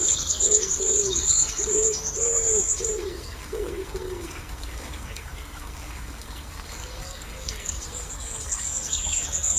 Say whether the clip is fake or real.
fake